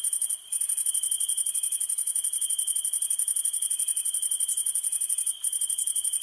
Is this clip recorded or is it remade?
recorded